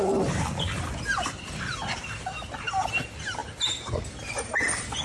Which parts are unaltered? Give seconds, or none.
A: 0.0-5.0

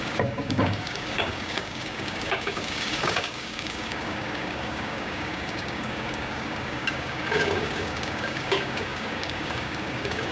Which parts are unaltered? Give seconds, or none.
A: none

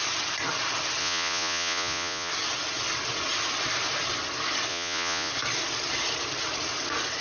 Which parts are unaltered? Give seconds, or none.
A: 0.0-1.0; 2.3-4.7; 5.3-7.2

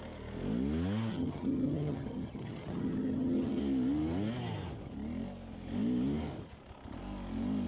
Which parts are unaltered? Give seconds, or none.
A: 0.0-1.1; 3.6-7.7

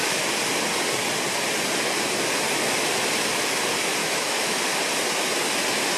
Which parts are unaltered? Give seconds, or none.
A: 0.0-4.0; 4.6-6.0

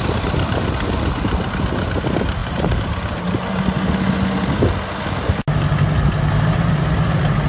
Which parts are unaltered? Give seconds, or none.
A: 0.0-2.4; 3.6-7.5

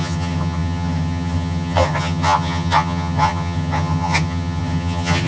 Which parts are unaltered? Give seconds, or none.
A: none